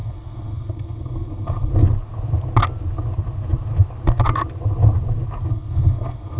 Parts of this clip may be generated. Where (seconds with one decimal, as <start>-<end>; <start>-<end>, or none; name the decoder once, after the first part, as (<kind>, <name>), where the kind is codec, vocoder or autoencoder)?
0.0-1.7 (codec, SNAC); 5.5-6.4